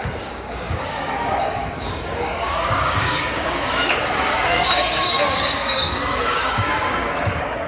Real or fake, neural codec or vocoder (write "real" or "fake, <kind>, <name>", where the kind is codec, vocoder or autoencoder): fake, codec, DAC